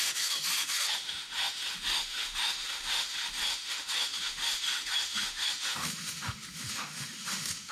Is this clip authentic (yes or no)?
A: no